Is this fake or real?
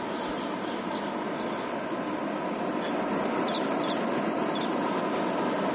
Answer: real